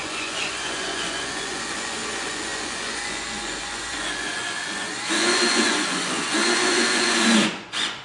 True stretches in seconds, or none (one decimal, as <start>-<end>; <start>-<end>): none